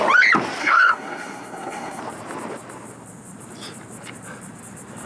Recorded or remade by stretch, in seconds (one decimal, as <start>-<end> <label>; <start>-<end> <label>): 0.0-0.6 recorded; 0.6-2.0 remade; 2.0-5.1 recorded